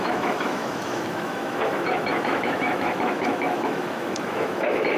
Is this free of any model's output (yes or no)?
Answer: no